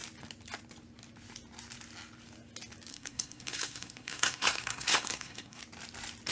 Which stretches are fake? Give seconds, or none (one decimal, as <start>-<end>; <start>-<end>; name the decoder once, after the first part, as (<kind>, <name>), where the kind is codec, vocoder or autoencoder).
2.9-5.6 (codec, SNAC)